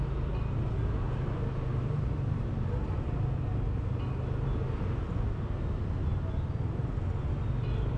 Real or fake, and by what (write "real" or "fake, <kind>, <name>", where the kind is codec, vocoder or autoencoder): real